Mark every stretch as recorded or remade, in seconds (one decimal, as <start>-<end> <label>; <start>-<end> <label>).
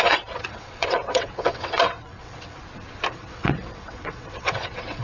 0.0-2.6 remade; 2.6-3.1 recorded; 3.1-5.0 remade